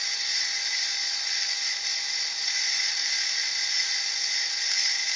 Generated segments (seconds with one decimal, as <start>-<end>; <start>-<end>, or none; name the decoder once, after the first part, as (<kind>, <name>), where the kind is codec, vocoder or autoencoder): none